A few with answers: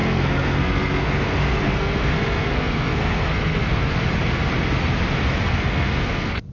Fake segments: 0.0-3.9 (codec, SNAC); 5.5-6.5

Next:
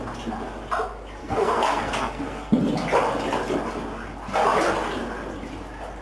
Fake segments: 1.2-2.6 (codec, SNAC)